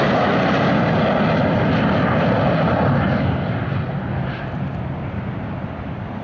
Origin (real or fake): real